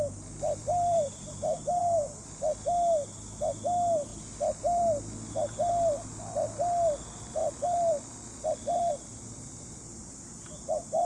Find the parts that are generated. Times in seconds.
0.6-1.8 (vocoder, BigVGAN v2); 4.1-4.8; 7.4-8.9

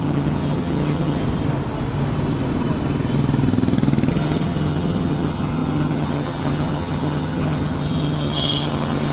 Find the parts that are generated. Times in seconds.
0.0-1.2 (vocoder, HiFi-GAN); 4.1-9.1

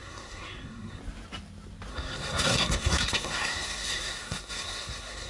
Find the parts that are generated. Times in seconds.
0.0-1.0 (codec, SNAC); 1.9-5.3